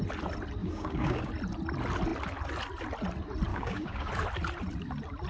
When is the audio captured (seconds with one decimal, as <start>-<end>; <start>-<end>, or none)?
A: 0.0-0.6; 1.3-3.5; 4.1-5.3